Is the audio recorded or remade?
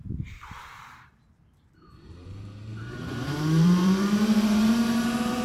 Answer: remade